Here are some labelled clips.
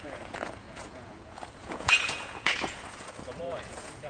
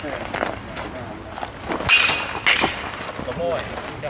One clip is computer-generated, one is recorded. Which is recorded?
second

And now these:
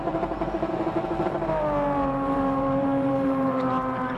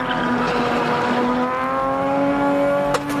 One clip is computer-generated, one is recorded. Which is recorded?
second